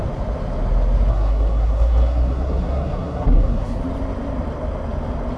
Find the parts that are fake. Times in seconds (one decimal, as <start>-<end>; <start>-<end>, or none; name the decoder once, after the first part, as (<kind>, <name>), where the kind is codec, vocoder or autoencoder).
1.1-3.8 (codec, SNAC)